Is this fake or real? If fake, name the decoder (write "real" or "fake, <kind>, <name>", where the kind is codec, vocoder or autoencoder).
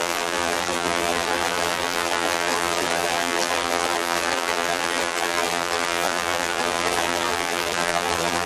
fake, vocoder, BigVGAN v2